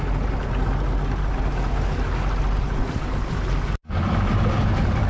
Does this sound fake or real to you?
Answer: real